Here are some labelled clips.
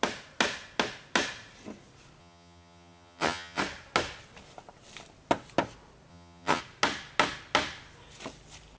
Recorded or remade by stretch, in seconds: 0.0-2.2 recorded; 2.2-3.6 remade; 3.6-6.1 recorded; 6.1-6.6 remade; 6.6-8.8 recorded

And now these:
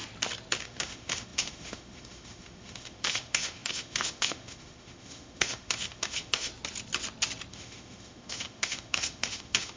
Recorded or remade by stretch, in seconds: 0.0-0.6 recorded; 0.6-6.5 remade; 6.5-7.5 recorded; 7.5-9.8 remade